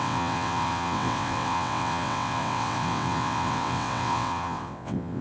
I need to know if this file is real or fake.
fake